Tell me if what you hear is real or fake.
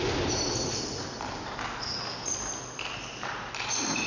real